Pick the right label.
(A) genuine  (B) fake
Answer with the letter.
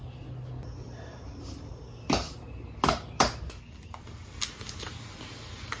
A